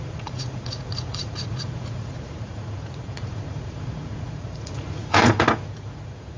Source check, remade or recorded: remade